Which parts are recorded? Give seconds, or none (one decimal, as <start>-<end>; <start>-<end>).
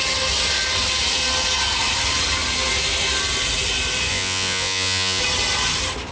0.0-4.1; 5.2-6.1